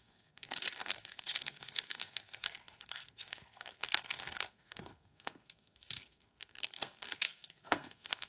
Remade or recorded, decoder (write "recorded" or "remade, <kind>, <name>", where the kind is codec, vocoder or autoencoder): remade, codec, SNAC